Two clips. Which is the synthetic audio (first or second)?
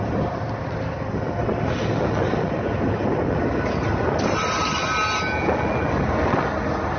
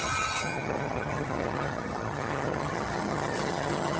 second